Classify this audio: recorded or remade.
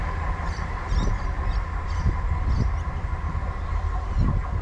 recorded